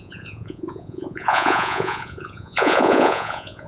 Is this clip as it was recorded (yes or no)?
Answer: no